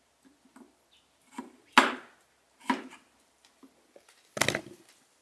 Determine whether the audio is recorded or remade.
recorded